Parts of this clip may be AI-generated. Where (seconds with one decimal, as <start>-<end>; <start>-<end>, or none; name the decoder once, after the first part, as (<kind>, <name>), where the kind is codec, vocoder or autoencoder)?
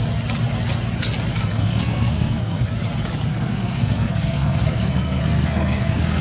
1.3-2.7 (codec, SNAC); 3.3-6.2